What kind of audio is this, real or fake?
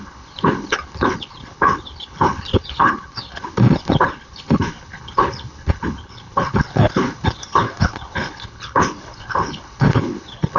fake